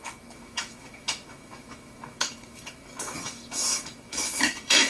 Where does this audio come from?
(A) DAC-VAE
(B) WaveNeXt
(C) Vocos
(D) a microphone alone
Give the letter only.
A